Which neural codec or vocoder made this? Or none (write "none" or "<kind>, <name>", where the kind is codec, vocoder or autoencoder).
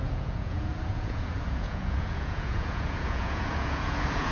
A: vocoder, Vocos